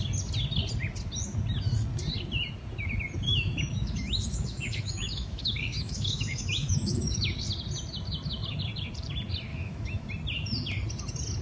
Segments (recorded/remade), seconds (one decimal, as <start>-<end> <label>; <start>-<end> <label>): 0.0-3.3 recorded; 3.3-7.3 remade; 7.3-9.5 recorded; 9.5-10.1 remade; 10.1-11.4 recorded